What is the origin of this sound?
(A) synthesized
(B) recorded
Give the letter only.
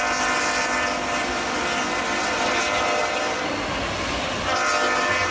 B